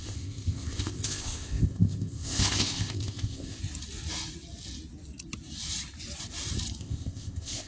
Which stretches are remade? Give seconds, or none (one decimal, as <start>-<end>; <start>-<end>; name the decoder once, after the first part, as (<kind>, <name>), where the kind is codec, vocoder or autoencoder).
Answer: 0.0-3.6 (codec, ZipCodec); 6.8-7.7